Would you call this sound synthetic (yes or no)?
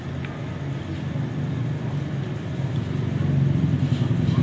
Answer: no